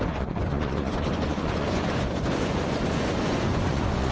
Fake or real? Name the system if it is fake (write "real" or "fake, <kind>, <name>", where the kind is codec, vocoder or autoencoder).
fake, vocoder, Vocos